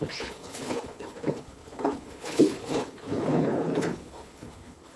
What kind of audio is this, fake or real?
fake